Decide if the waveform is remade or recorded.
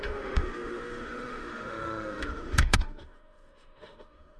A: remade